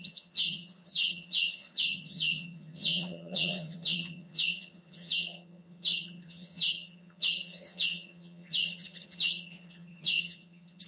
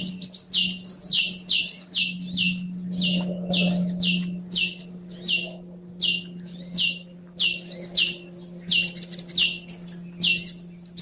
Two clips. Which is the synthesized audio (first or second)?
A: first